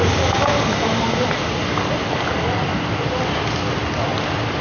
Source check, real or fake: real